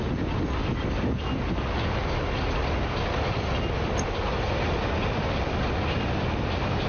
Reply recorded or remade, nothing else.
recorded